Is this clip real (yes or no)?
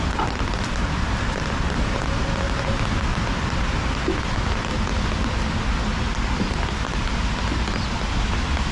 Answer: yes